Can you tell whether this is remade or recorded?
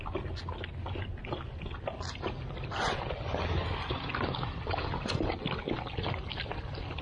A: recorded